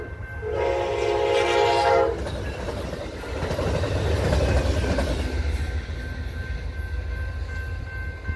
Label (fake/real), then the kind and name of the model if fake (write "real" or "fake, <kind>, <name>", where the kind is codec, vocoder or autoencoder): real